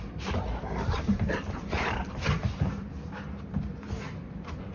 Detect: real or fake fake